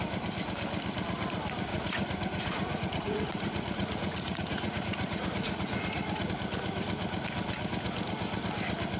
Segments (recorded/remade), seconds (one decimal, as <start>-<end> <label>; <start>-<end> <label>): 0.0-1.7 recorded; 1.7-6.3 remade; 6.3-9.0 recorded

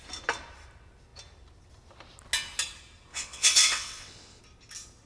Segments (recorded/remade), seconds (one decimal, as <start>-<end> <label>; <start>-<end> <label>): 0.0-3.1 recorded; 3.1-4.4 remade; 4.4-5.1 recorded